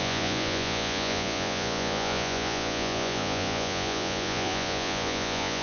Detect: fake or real fake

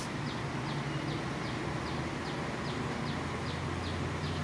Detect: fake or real real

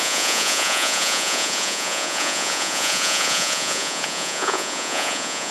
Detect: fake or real fake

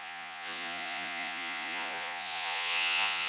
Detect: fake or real fake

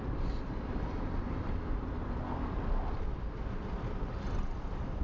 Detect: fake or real real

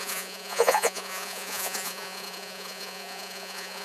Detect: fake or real fake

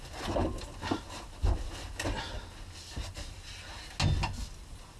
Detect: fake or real real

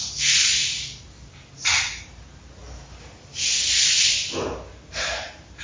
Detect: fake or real real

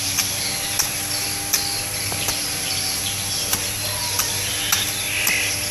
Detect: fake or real real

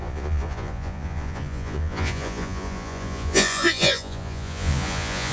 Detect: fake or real fake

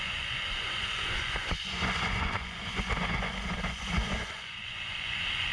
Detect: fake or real fake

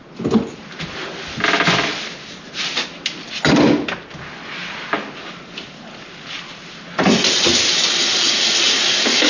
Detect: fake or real real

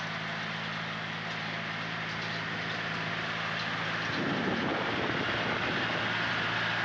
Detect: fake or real real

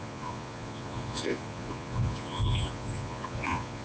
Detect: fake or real fake